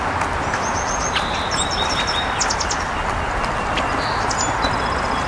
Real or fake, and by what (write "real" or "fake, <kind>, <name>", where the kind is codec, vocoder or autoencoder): real